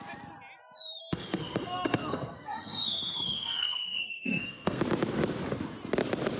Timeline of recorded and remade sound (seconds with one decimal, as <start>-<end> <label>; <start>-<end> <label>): 0.0-1.0 recorded; 1.0-4.8 remade; 4.8-6.4 recorded